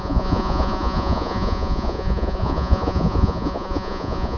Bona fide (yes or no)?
no